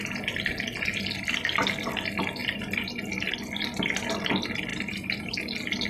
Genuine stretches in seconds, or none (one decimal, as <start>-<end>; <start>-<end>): 0.0-4.7; 5.3-5.9